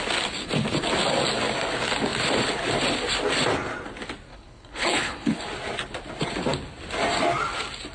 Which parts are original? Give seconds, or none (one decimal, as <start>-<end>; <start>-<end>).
0.0-4.3; 5.4-7.9